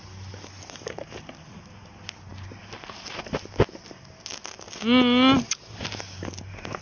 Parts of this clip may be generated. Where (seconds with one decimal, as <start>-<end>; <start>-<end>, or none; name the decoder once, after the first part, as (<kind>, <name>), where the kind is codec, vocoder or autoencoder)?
none